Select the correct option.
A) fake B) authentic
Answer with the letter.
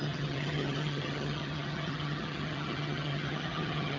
A